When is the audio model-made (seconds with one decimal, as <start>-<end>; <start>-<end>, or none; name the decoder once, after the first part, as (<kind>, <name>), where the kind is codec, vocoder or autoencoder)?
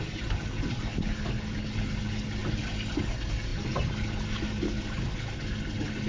none